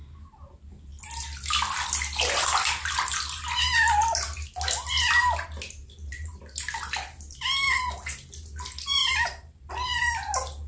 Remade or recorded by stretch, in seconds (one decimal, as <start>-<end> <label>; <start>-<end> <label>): 0.0-5.8 recorded; 5.8-6.4 remade; 6.4-10.7 recorded